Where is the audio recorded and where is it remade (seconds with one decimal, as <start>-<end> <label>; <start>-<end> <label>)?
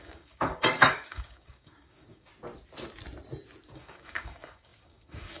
0.0-2.3 remade; 2.3-3.7 recorded; 3.7-5.4 remade